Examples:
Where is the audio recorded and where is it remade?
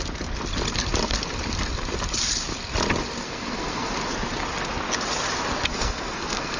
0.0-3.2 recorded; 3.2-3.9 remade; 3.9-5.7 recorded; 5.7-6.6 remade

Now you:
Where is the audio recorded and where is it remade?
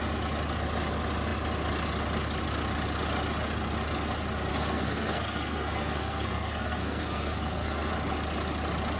0.0-4.5 recorded; 4.5-7.9 remade; 7.9-9.0 recorded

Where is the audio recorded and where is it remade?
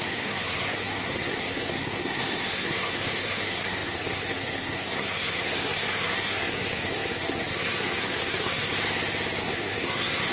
0.0-8.7 remade; 8.7-9.4 recorded; 9.4-10.3 remade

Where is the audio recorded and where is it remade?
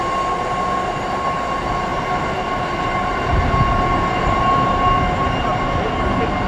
0.0-6.5 recorded